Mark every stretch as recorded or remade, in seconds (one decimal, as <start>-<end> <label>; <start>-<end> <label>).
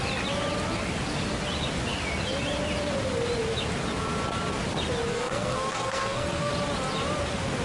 0.0-5.1 recorded; 5.1-6.5 remade; 6.5-7.6 recorded